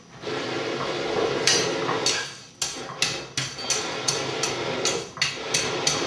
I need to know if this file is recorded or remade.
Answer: recorded